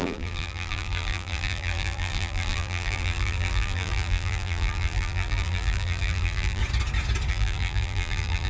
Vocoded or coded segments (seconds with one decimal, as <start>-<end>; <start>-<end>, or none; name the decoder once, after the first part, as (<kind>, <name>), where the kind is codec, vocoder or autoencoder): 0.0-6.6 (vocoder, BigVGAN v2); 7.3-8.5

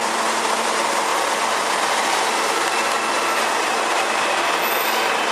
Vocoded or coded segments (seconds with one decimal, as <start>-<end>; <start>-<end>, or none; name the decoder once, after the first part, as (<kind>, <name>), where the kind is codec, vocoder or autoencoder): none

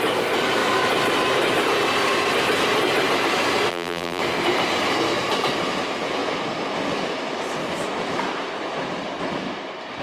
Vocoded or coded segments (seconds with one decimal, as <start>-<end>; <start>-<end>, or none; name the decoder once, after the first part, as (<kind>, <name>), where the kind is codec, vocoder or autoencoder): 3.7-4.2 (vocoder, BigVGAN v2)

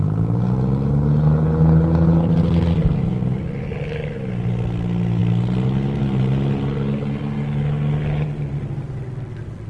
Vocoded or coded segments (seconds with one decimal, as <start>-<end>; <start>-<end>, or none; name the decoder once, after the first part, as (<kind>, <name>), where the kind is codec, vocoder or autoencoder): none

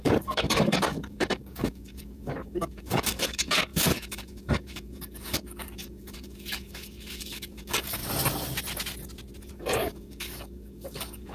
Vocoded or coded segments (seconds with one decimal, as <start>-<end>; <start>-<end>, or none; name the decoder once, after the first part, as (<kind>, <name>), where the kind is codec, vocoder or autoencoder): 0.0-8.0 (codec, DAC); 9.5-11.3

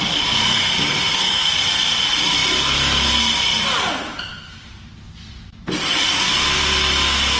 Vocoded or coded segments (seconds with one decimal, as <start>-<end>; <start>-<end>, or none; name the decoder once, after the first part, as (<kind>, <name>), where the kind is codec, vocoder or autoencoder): 0.4-1.5 (codec, SNAC)

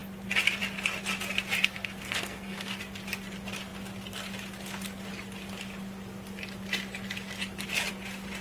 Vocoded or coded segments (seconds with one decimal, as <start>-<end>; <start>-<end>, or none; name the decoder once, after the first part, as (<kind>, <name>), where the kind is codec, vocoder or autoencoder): 1.6-2.8 (codec, SNAC)

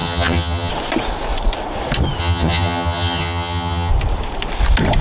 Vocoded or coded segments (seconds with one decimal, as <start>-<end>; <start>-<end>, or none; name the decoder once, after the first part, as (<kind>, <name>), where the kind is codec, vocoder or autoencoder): 0.0-0.7 (vocoder, HiFi-GAN); 2.2-3.9